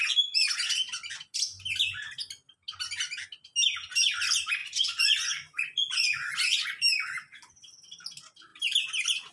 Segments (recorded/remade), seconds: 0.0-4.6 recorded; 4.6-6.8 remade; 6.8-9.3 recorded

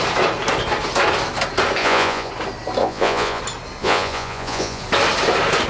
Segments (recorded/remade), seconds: 0.0-1.8 recorded; 1.8-2.3 remade; 2.3-2.8 recorded; 2.8-3.4 remade; 3.4-3.8 recorded; 3.8-4.8 remade; 4.8-5.7 recorded

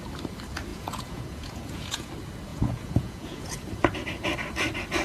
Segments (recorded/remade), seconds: 0.0-0.7 recorded; 0.7-2.1 remade; 2.1-2.5 recorded; 2.5-3.7 remade; 3.7-5.0 recorded

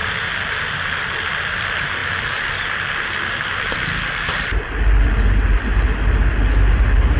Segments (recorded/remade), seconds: 0.0-7.2 recorded

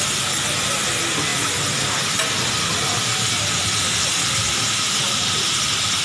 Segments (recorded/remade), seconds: 0.0-6.0 recorded

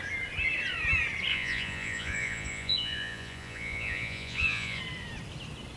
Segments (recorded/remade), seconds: 0.0-1.3 recorded; 1.3-4.8 remade; 4.8-5.8 recorded

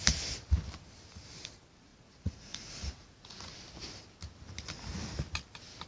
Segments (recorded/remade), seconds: 0.0-1.9 recorded; 1.9-3.5 remade; 3.5-5.9 recorded